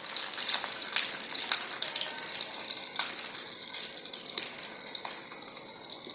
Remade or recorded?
recorded